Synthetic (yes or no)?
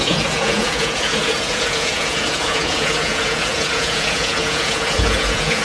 yes